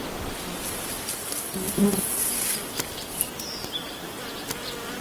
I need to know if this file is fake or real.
real